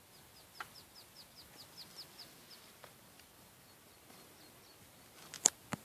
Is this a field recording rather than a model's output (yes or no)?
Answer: yes